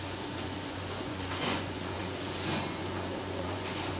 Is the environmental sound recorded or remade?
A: remade